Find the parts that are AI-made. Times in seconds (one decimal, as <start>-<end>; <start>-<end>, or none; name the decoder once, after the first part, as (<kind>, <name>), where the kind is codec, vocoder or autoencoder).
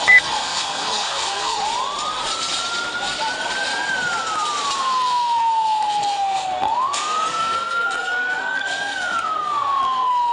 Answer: 0.0-1.6 (codec, SNAC); 4.8-10.3